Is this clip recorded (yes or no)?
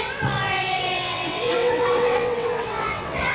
no